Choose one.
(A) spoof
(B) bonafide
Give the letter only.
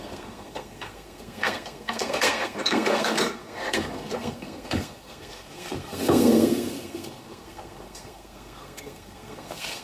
A